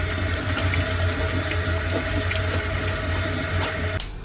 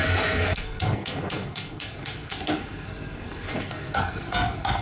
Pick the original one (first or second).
first